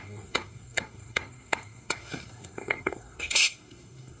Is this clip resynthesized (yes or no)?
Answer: yes